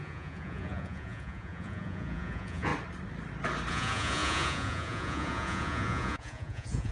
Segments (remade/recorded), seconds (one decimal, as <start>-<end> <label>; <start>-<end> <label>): 0.0-2.7 remade; 2.7-3.7 recorded; 3.7-6.9 remade